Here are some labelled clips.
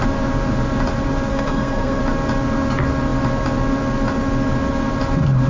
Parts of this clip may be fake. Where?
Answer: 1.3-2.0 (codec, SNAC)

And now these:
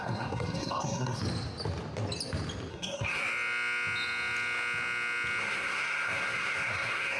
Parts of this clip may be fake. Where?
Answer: 0.0-1.2 (codec, SNAC); 2.7-3.2; 5.4-7.2

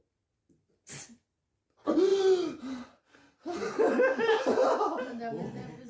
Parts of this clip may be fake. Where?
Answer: none

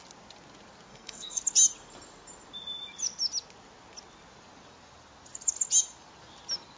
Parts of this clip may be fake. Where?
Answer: 0.9-1.4 (codec, SNAC)

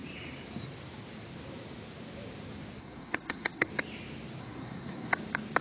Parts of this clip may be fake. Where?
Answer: 2.8-3.7 (codec, SNAC); 4.4-5.1